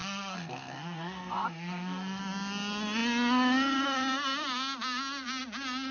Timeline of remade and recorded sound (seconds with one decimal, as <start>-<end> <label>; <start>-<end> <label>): 0.0-2.2 remade; 2.2-5.9 recorded